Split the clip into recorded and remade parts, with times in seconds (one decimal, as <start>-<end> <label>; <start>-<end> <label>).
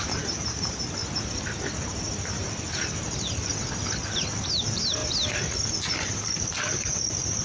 0.0-1.0 remade; 1.0-1.8 recorded; 1.8-3.5 remade; 3.5-4.5 recorded; 4.5-5.0 remade; 5.0-6.1 recorded; 6.1-7.4 remade